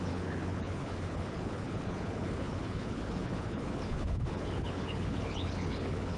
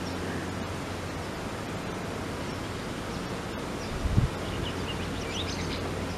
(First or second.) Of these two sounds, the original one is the second